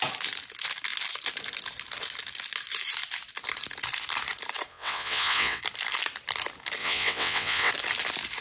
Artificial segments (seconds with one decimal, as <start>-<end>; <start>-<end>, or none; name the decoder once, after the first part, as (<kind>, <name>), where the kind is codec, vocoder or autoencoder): 4.7-5.6 (vocoder, WaveNeXt); 6.8-7.7